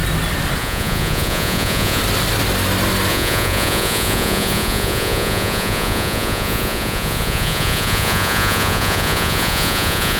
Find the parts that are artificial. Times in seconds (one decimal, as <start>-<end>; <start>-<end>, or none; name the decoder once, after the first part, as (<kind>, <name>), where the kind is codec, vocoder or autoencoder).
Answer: 0.6-2.0 (vocoder, Vocos); 3.1-10.2